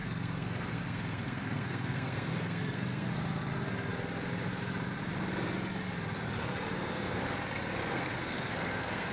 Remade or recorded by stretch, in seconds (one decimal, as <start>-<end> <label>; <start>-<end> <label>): 0.0-3.1 remade; 3.1-6.4 recorded; 6.4-7.2 remade; 7.2-7.8 recorded; 7.8-9.1 remade